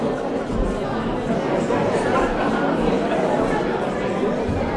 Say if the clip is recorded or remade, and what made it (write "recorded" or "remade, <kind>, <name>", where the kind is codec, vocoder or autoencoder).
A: recorded